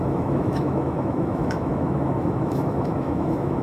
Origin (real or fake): fake